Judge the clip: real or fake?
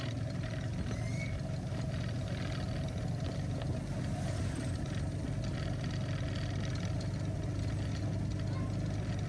real